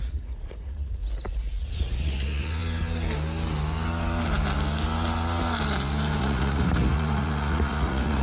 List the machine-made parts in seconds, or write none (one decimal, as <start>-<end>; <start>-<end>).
0.0-1.0; 1.5-2.6; 6.2-8.2